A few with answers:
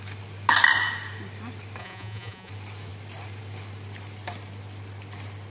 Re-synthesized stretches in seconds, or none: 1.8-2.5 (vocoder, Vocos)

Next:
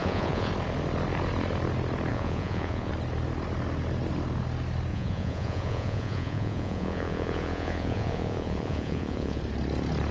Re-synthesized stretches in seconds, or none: 0.0-0.5 (vocoder, Vocos); 2.1-2.9; 4.9-9.4